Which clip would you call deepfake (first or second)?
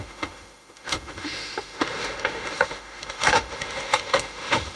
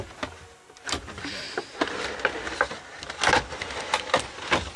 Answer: first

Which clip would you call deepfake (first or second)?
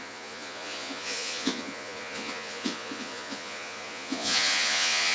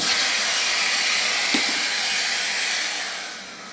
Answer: first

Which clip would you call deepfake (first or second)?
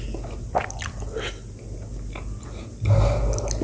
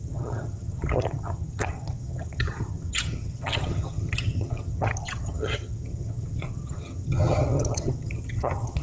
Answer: second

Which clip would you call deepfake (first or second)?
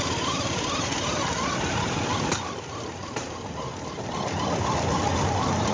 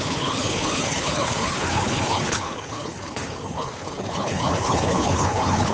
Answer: second